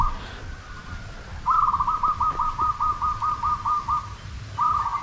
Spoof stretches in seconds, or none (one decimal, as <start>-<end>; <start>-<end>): none